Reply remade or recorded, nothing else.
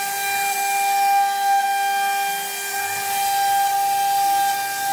recorded